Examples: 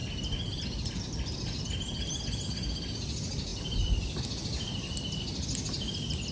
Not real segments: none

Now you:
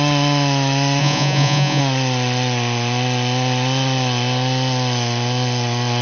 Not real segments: 1.0-1.8 (vocoder, Vocos)